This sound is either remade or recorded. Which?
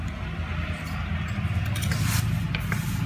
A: recorded